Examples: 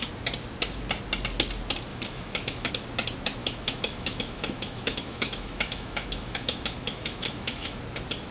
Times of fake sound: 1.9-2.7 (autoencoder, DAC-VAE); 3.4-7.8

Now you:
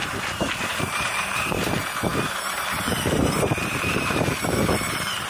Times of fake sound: 0.0-5.3 (vocoder, BigVGAN v2)

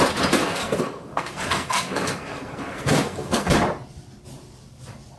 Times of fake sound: 0.4-3.5 (codec, SNAC)

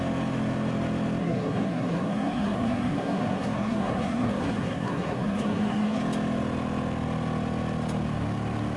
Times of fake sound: 1.2-6.0 (codec, SNAC)

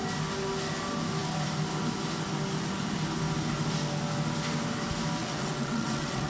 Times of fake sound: 5.2-6.3 (vocoder, WaveNeXt)

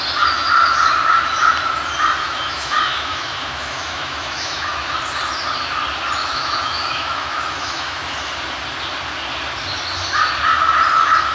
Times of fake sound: 2.2-5.0 (autoencoder, DAC-VAE); 6.2-8.3

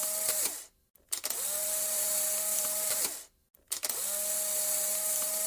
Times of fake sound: 1.6-3.0 (vocoder, BigVGAN v2); 4.9-5.5

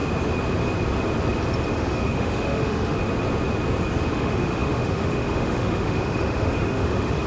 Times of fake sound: 1.7-3.0 (autoencoder, DAC-VAE); 4.1-7.3